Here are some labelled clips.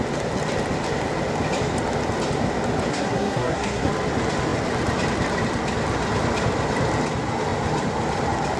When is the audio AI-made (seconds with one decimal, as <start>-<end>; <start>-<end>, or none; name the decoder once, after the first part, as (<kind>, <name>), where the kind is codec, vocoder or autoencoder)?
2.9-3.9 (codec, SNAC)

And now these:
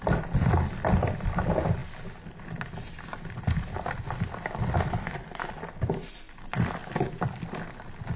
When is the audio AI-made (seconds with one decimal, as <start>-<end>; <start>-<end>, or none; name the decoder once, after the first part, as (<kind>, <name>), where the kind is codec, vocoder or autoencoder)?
none

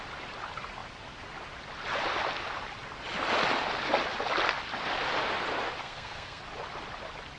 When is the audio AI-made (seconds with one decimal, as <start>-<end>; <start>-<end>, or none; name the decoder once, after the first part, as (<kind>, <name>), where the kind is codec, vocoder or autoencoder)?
5.8-6.4 (codec, SNAC)

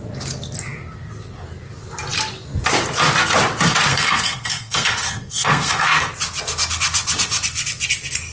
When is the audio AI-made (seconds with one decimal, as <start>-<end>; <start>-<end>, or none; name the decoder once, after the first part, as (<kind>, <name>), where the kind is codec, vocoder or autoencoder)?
3.9-6.1 (codec, SNAC)

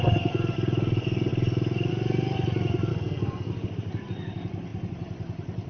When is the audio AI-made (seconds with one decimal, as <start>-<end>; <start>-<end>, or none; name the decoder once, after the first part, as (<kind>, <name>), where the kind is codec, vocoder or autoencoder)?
2.9-3.5 (codec, SNAC)

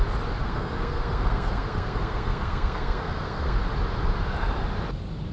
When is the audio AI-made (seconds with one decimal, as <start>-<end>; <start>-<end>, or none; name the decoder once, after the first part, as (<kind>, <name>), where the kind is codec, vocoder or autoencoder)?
0.4-3.6 (codec, SNAC)